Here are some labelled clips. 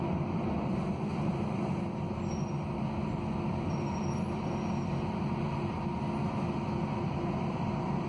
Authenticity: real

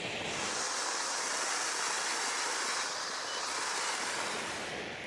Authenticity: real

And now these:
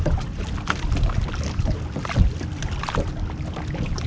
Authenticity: real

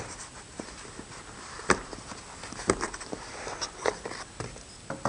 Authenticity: real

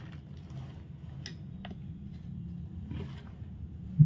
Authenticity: real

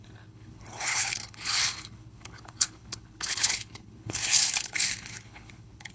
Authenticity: fake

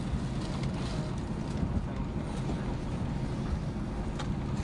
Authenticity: real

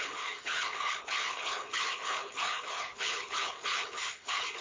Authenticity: fake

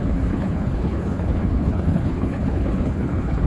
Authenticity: fake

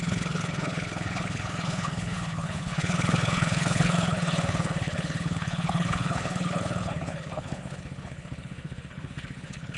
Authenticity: fake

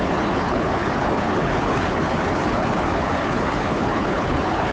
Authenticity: fake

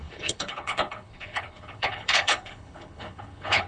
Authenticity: fake